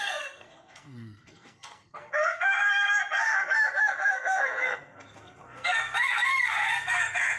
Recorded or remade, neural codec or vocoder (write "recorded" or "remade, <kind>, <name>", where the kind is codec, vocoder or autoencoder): remade, codec, SNAC